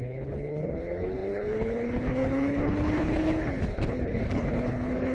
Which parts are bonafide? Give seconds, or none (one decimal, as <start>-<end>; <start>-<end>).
none